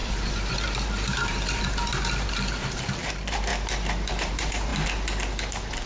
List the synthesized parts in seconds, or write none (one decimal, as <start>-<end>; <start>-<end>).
0.0-3.5; 4.1-4.7